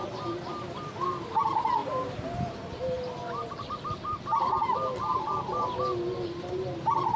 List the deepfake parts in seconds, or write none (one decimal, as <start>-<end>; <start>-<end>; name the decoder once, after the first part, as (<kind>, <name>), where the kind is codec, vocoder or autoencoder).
1.8-5.6 (vocoder, BigVGAN v2)